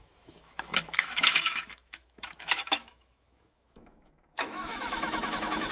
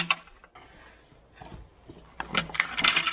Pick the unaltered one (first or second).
second